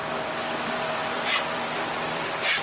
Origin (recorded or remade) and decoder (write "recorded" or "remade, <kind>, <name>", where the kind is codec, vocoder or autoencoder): remade, vocoder, BigVGAN v2